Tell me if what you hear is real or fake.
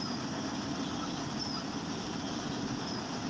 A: real